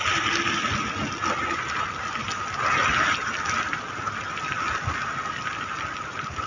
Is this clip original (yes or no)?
yes